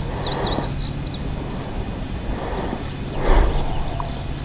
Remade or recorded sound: recorded